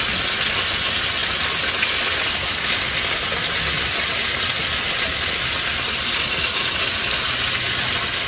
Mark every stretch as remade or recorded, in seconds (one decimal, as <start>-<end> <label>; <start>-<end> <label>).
0.0-8.3 recorded